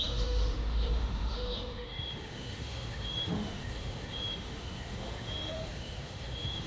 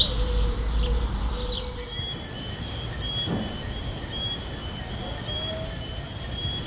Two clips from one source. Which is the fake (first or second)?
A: first